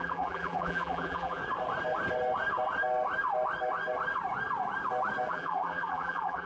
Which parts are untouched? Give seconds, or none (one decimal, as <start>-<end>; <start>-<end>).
1.4-5.3